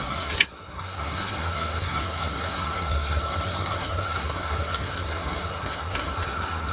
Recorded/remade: remade